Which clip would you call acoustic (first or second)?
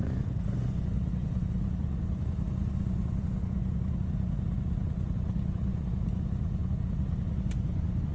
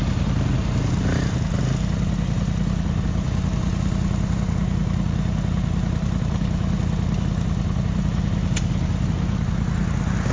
second